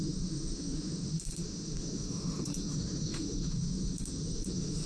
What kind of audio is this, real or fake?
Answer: fake